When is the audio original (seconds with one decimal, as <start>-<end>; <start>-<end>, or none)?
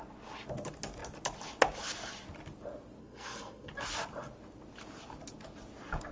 0.0-3.0; 3.7-6.1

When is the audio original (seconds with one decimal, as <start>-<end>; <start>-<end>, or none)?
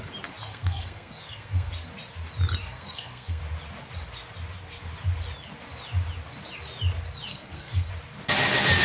0.0-0.5; 1.7-2.6; 3.4-7.3; 7.9-8.8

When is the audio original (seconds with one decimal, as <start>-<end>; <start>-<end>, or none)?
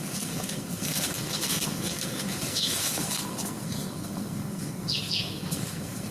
none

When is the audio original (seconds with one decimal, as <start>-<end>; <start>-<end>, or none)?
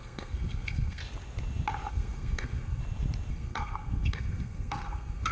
1.0-1.9; 2.8-3.3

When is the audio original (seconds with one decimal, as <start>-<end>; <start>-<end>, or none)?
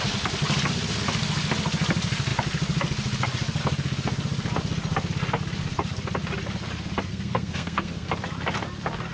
0.0-7.1; 8.1-9.1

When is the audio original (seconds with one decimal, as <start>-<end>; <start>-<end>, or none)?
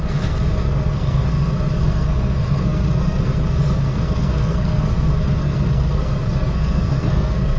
none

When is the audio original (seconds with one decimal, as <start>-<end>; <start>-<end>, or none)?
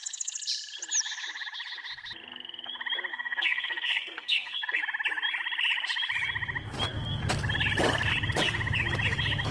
0.0-3.1; 4.8-9.5